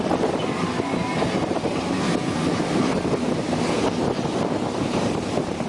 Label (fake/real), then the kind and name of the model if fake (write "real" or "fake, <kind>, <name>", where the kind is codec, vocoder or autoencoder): real